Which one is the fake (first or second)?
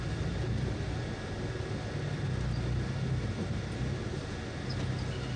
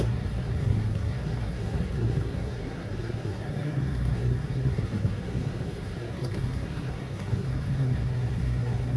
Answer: second